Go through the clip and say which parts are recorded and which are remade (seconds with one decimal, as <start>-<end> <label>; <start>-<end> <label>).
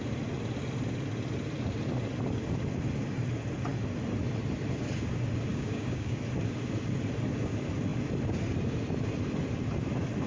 0.0-5.5 recorded; 5.5-6.2 remade; 6.2-10.3 recorded